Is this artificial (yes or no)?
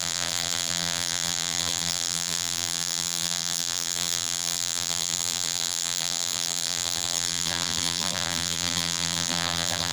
yes